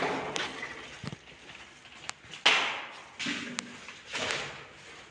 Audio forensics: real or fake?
real